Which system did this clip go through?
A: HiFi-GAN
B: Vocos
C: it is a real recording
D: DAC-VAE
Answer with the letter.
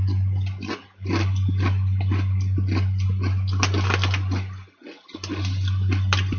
C